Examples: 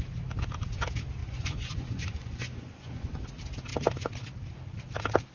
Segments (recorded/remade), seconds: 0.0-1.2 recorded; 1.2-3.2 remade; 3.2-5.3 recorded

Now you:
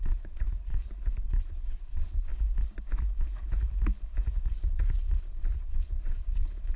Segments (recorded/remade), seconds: 0.0-0.7 remade; 0.7-1.2 recorded; 1.2-2.3 remade; 2.3-4.5 recorded; 4.5-6.8 remade

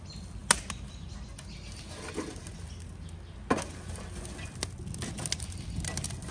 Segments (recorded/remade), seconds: 0.0-6.3 recorded